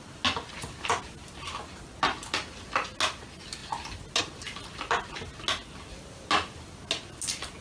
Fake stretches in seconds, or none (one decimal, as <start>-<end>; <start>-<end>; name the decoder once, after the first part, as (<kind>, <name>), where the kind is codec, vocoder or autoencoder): none